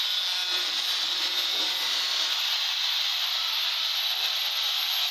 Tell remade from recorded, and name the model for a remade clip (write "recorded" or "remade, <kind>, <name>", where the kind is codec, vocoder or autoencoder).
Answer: recorded